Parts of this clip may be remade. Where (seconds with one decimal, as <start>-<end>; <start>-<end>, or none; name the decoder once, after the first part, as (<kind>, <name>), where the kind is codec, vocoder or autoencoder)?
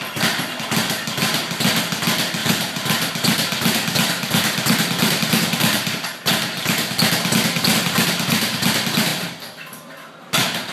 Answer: 2.4-3.1 (vocoder, BigVGAN v2); 5.2-6.2